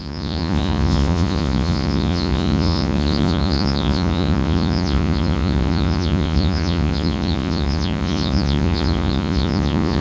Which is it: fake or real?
fake